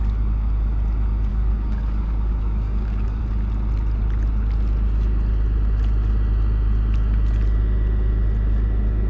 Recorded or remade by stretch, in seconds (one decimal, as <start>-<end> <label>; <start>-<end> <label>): 0.0-1.3 recorded; 1.3-3.2 remade; 3.2-9.1 recorded